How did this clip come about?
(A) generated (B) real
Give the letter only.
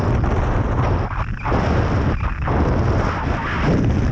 B